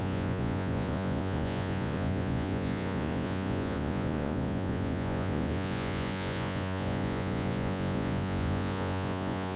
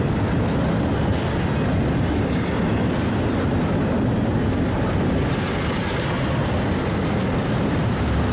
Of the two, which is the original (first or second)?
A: second